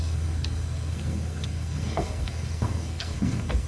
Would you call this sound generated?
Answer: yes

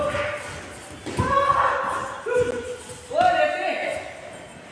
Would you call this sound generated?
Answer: no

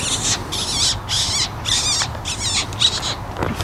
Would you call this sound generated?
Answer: no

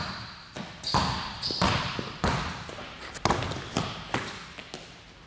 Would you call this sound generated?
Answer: no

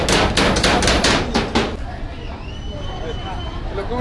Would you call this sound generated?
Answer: no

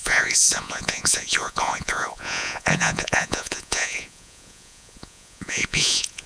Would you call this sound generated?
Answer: yes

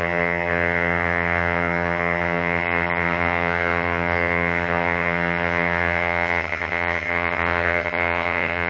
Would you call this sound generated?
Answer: yes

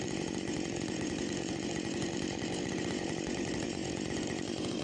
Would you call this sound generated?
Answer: yes